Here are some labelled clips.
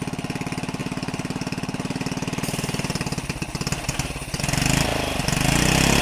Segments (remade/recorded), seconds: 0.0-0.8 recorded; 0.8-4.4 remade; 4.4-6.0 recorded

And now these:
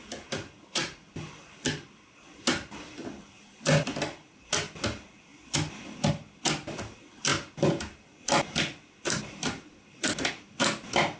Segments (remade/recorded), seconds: 0.0-0.8 recorded; 0.8-1.5 remade; 1.5-5.3 recorded; 5.3-6.1 remade; 6.1-11.2 recorded

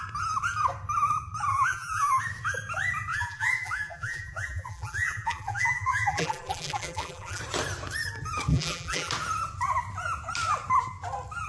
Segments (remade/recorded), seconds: 0.0-1.5 recorded; 1.5-2.2 remade; 2.2-3.1 recorded; 3.1-7.4 remade; 7.4-8.5 recorded; 8.5-9.1 remade; 9.1-11.5 recorded

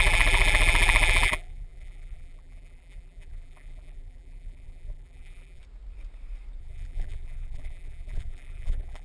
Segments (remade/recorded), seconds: 0.0-5.6 remade; 5.6-6.6 recorded; 6.6-9.0 remade

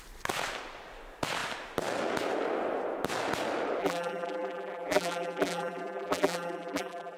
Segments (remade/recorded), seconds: 0.0-3.8 recorded; 3.8-7.2 remade

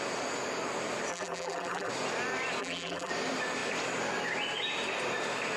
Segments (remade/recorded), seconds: 0.0-1.1 recorded; 1.1-1.9 remade; 1.9-2.6 recorded; 2.6-3.1 remade; 3.1-5.6 recorded